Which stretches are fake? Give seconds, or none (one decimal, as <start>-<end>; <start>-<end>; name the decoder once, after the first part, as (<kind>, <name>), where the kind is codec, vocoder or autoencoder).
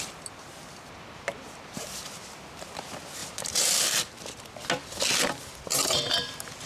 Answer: 3.2-3.7 (vocoder, BigVGAN v2)